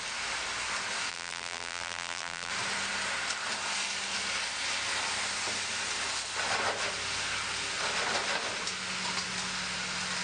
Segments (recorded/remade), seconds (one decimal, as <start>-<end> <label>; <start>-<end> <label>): 0.0-1.1 recorded; 1.1-2.5 remade; 2.5-10.2 recorded